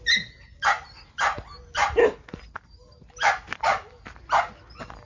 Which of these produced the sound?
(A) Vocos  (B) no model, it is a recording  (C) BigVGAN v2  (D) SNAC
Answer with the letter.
B